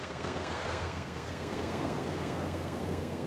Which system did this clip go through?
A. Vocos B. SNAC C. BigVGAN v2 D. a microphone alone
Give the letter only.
B